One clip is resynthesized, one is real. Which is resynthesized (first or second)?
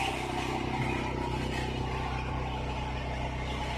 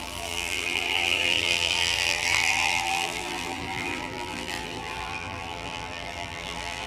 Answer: second